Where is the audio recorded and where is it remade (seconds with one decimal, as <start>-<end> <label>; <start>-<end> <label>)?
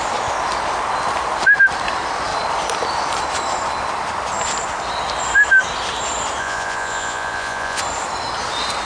0.0-6.4 recorded; 6.4-7.8 remade; 7.8-8.8 recorded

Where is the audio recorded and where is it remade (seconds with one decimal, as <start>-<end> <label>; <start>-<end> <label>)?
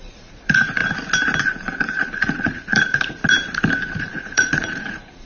0.0-0.8 remade; 0.8-1.4 recorded; 1.4-3.2 remade; 3.2-4.0 recorded; 4.0-5.3 remade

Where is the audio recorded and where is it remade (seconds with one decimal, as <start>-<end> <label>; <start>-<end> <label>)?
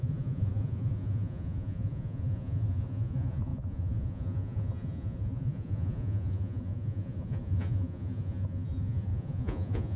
0.0-10.0 remade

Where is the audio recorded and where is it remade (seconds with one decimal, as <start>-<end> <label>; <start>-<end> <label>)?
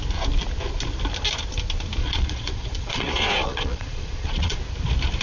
0.0-2.0 recorded; 2.0-4.6 remade; 4.6-5.2 recorded